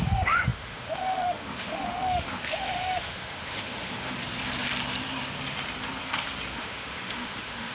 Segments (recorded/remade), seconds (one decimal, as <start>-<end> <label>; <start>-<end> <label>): 0.0-4.2 remade; 4.2-6.6 recorded; 6.6-7.7 remade